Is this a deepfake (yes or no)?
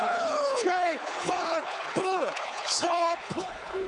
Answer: yes